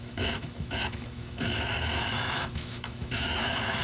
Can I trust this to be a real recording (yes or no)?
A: no